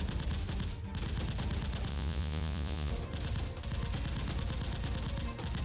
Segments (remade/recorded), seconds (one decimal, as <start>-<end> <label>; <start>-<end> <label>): 0.0-1.9 recorded; 1.9-2.9 remade; 2.9-5.6 recorded